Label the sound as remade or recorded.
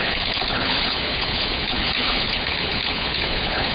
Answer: remade